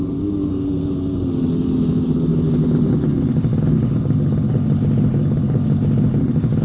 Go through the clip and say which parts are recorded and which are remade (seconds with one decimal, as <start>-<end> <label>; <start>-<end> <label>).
0.0-0.5 recorded; 0.5-1.3 remade; 1.3-6.6 recorded